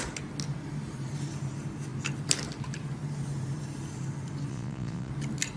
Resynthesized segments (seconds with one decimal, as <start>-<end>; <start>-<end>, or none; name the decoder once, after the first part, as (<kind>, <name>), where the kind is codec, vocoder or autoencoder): 4.5-5.1 (vocoder, Vocos)